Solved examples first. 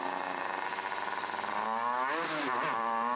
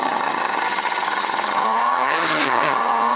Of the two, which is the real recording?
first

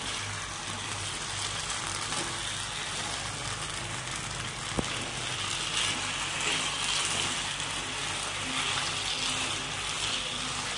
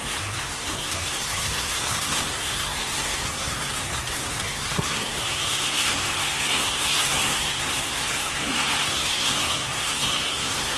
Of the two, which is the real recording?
first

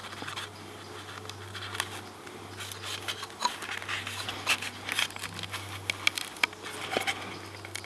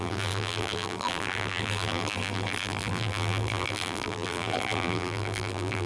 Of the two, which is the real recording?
first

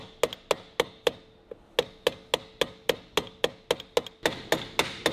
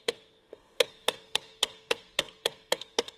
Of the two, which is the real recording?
first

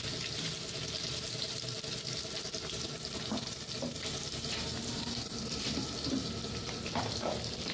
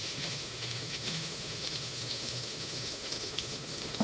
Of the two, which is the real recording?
first